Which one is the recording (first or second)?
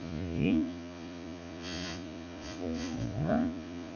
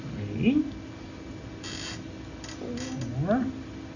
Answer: second